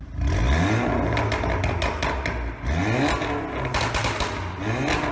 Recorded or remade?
recorded